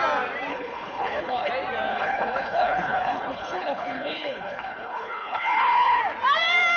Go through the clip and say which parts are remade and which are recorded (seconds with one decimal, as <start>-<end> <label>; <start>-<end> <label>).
0.0-0.5 recorded; 0.5-1.5 remade; 1.5-1.9 recorded; 1.9-6.0 remade; 6.0-6.8 recorded